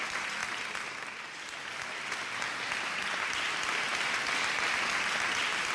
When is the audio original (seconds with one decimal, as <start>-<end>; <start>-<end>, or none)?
0.0-5.7